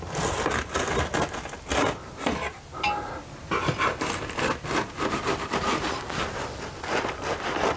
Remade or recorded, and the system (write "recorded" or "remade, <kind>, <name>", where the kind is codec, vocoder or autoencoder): recorded